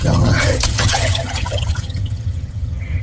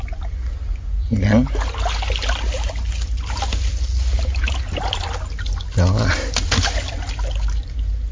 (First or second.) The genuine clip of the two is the second